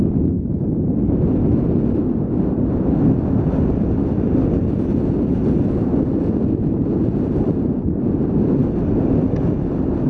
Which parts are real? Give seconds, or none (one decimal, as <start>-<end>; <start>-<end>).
0.0-10.1